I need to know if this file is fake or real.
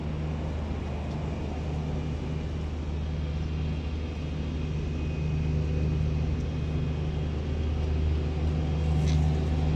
real